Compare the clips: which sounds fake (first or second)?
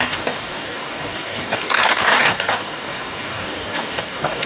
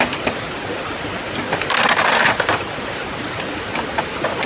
first